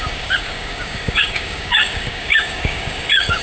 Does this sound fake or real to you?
fake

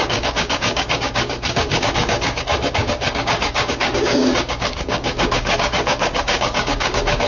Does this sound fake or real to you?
fake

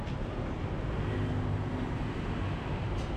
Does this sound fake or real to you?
real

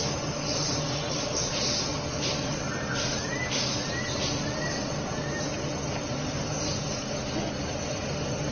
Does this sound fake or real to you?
real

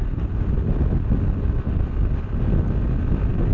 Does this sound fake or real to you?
real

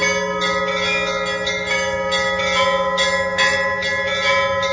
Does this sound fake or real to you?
real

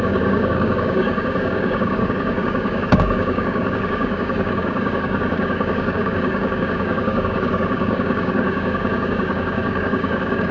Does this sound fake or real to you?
fake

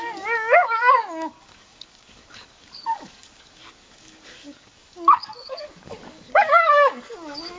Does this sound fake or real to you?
fake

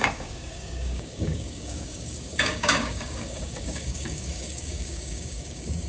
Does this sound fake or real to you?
fake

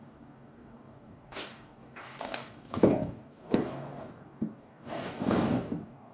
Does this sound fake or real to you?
fake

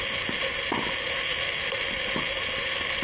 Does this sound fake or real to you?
real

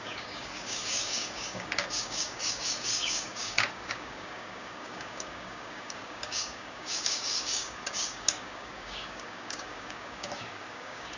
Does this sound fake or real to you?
fake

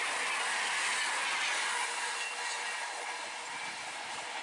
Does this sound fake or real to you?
real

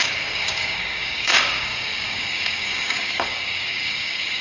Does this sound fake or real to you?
fake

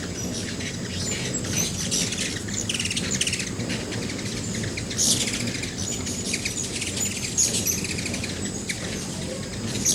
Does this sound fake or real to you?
real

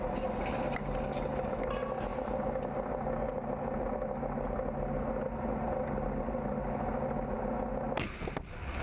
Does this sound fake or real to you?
real